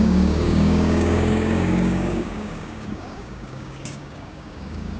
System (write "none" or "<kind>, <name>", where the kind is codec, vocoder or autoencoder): codec, DAC